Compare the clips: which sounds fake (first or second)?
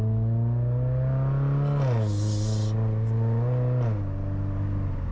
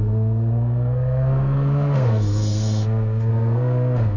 second